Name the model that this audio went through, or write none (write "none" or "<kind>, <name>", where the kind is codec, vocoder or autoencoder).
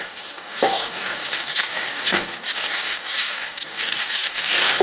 codec, DAC